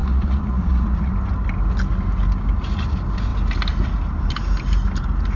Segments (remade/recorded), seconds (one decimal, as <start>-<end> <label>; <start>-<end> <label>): 0.0-1.1 remade; 1.1-5.4 recorded